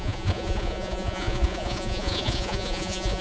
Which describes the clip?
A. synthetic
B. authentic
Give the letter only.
A